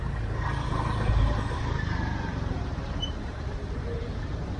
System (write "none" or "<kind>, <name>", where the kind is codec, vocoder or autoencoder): vocoder, BigVGAN v2